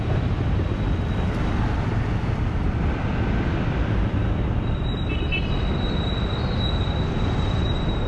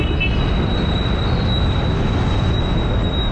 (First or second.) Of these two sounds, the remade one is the first